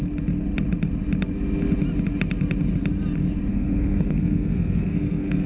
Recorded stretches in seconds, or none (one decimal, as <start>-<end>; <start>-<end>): 0.0-3.5